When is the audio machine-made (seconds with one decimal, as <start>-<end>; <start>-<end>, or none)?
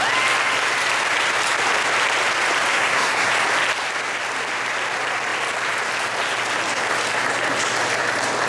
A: 2.7-3.3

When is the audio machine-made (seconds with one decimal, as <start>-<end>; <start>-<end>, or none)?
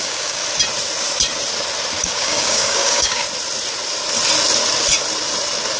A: 0.0-0.4; 2.0-3.2